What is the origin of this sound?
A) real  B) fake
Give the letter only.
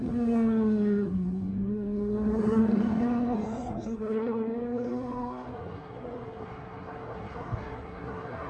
B